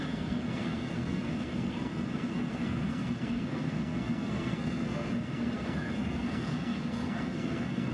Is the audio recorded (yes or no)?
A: no